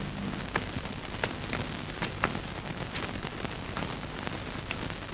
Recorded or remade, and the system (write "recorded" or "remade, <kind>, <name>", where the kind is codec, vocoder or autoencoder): recorded